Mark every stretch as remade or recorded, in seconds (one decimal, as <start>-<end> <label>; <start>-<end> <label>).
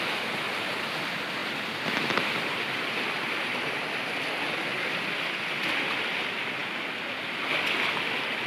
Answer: 0.0-8.5 recorded